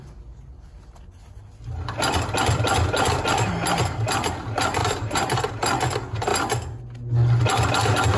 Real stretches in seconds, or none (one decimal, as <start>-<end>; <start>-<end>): 0.0-4.8; 5.5-8.2